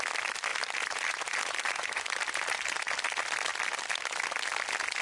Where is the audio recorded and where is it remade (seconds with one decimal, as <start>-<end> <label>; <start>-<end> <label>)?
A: 0.0-0.5 recorded; 0.5-2.8 remade; 2.8-5.0 recorded